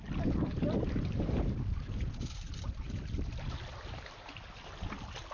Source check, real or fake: real